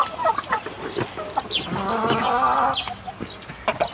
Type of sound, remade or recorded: recorded